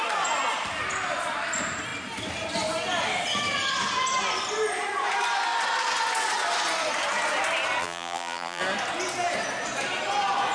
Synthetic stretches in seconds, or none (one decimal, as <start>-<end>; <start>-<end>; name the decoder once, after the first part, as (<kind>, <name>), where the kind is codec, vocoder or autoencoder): 7.8-8.6 (vocoder, BigVGAN v2)